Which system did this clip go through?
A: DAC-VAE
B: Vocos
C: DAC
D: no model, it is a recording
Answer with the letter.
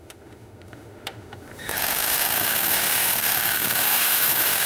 A